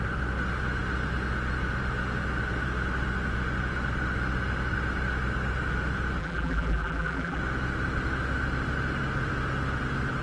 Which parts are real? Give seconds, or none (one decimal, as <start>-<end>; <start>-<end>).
0.0-6.2; 7.4-10.2